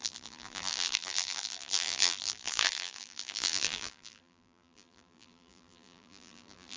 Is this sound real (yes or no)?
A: no